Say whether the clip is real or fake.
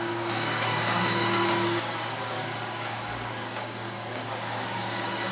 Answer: fake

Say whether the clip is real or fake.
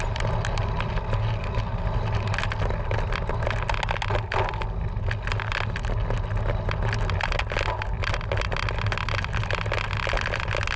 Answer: real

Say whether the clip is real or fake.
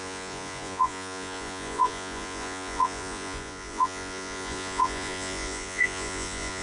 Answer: fake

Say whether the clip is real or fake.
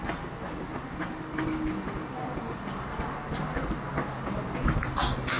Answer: real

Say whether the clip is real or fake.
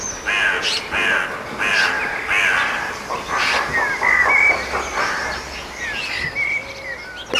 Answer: real